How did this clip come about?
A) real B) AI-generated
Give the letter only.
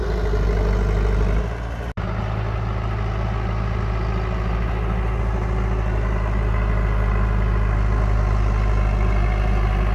A